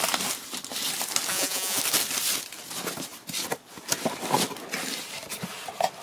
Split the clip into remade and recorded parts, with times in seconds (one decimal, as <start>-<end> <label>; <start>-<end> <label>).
0.0-1.3 recorded; 1.3-1.8 remade; 1.8-6.0 recorded